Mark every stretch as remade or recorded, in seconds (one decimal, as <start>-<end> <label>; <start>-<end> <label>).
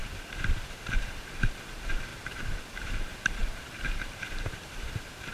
0.0-5.3 remade